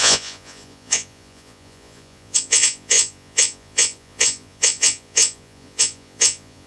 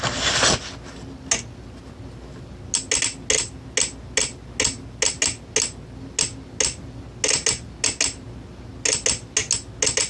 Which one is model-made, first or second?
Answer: first